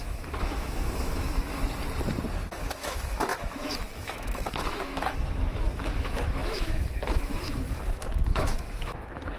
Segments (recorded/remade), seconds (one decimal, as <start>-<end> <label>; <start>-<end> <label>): 0.0-1.6 remade; 1.6-2.5 recorded; 2.5-9.4 remade